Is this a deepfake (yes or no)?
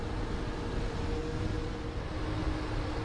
no